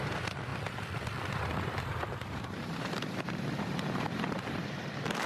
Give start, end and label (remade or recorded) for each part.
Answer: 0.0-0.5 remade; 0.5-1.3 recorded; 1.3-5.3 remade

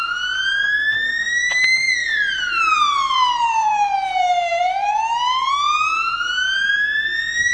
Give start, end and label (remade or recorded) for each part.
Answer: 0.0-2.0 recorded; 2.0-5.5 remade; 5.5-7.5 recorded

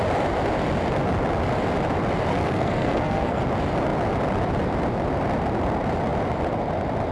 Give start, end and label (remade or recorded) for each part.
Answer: 0.0-2.3 recorded; 2.3-3.4 remade; 3.4-7.1 recorded